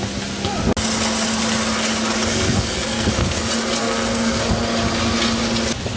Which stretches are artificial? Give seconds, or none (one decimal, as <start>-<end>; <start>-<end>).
2.3-3.4; 3.8-4.4